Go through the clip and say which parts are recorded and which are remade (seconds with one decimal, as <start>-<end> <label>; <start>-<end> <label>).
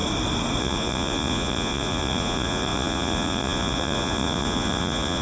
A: 0.0-0.6 recorded; 0.6-5.2 remade